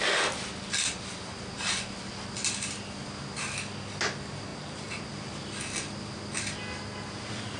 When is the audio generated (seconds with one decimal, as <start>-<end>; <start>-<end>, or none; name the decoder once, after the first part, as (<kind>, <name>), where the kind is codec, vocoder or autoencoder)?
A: 4.5-5.1 (vocoder, BigVGAN v2)